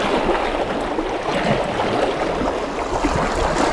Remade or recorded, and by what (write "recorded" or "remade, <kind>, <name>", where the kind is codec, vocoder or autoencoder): recorded